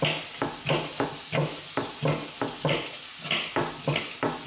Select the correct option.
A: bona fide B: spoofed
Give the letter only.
A